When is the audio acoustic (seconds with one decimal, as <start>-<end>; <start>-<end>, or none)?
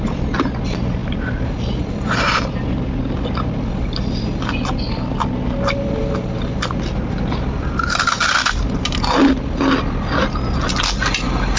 0.0-11.6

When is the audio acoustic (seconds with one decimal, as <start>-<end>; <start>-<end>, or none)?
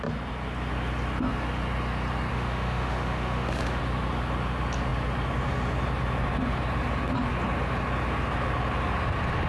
0.0-2.3; 3.8-9.5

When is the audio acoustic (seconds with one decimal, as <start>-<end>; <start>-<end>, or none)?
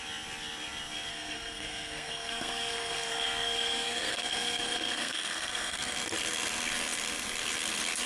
0.0-1.1; 6.0-8.1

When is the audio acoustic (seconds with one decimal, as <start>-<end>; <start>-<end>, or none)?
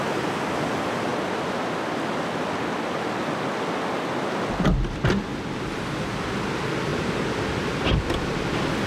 0.0-8.9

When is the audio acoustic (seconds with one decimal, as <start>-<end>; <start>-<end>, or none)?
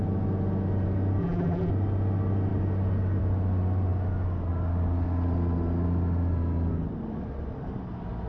0.0-1.2; 1.7-8.3